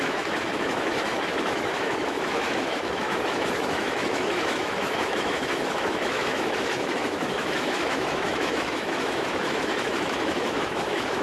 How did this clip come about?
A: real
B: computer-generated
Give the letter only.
B